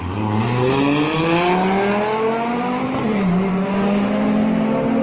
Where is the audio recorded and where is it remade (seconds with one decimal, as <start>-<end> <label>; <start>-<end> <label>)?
0.0-5.0 recorded